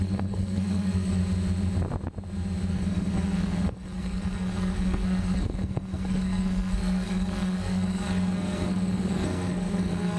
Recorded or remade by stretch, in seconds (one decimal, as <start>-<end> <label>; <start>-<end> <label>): 0.0-1.2 remade; 1.2-2.7 recorded; 2.7-10.2 remade